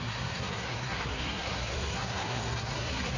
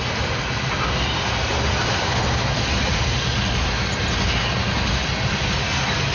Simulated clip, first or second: first